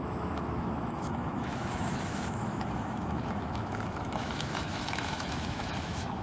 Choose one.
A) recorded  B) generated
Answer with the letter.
B